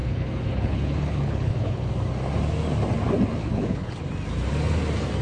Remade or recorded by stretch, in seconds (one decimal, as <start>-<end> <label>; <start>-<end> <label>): 0.0-1.9 remade; 1.9-3.4 recorded; 3.4-4.0 remade; 4.0-5.2 recorded